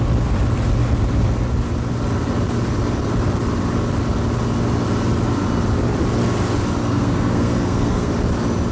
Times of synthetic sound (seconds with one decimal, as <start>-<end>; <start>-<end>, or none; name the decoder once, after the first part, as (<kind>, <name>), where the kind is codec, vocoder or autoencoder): 6.8-8.1 (codec, SNAC)